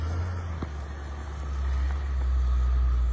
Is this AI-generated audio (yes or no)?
no